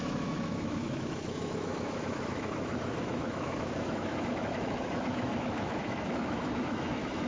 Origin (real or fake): fake